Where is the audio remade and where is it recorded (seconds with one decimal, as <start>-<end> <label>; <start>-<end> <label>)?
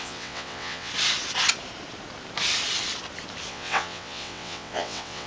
0.0-0.9 remade; 0.9-3.5 recorded; 3.5-5.3 remade